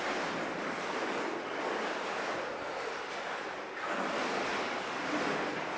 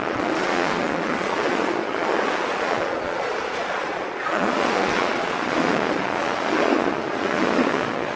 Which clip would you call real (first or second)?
first